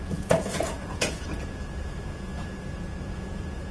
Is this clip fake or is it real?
fake